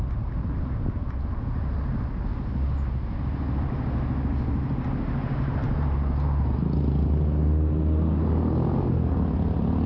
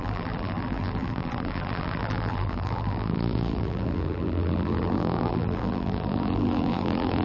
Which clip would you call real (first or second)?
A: first